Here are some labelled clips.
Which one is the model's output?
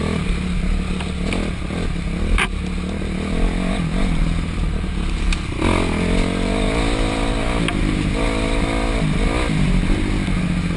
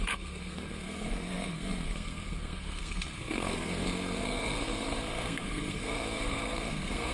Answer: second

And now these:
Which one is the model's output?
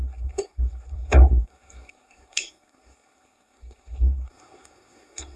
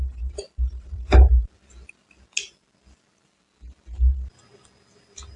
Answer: first